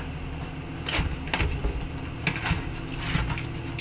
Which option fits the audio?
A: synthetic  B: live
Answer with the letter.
B